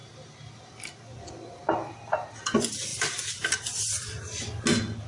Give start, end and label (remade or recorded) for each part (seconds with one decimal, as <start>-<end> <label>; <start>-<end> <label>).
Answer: 0.0-5.1 recorded